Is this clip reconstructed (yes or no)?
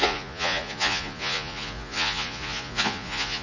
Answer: yes